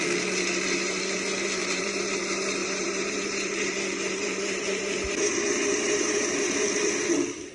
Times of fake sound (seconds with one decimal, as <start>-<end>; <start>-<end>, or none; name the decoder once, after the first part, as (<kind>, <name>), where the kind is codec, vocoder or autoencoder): 1.6-2.2 (vocoder, BigVGAN v2); 2.6-7.1